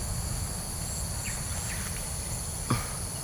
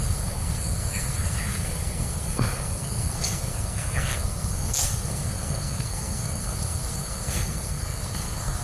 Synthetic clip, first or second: second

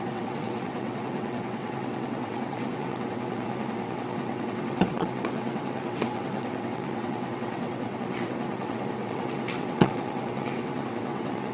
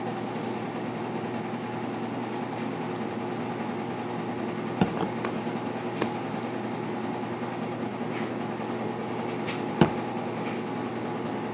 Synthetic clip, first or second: first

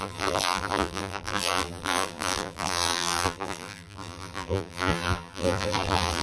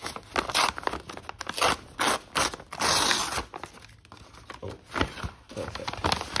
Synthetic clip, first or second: first